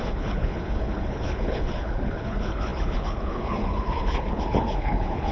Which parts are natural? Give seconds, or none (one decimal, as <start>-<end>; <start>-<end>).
none